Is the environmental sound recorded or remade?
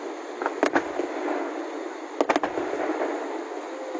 recorded